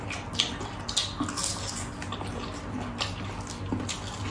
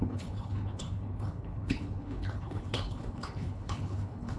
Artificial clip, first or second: second